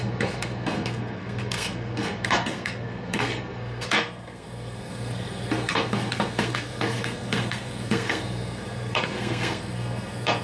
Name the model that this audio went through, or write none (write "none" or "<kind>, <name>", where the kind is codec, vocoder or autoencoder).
codec, SNAC